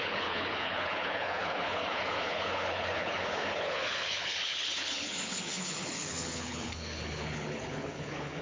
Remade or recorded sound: remade